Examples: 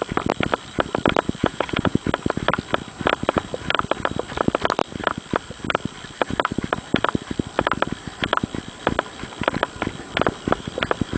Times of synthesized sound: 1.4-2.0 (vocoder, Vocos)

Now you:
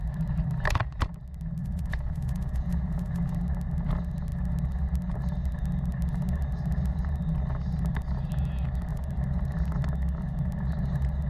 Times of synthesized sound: 1.6-3.3 (vocoder, Vocos)

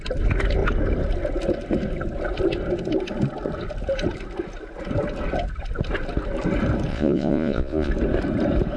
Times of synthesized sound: 6.9-7.9 (vocoder, Vocos)

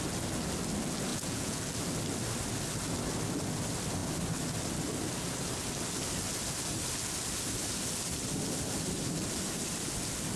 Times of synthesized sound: 1.1-1.6 (vocoder, Vocos)

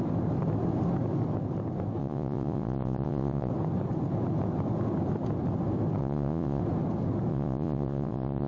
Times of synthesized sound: 2.0-3.5 (vocoder, Vocos); 6.0-6.6; 7.3-8.5

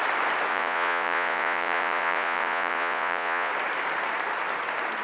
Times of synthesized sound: 0.5-3.5 (vocoder, Vocos)

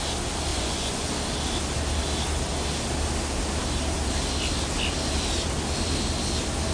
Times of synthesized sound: 0.5-1.1 (vocoder, Vocos)